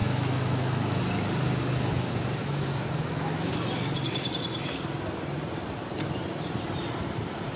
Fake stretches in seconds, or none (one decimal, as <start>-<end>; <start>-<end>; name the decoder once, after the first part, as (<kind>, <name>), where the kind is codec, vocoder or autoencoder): 0.0-1.0 (autoencoder, DAC-VAE); 2.4-3.5